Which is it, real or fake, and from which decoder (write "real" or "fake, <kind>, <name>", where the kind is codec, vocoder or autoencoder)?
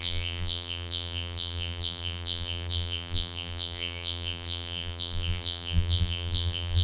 fake, vocoder, BigVGAN v2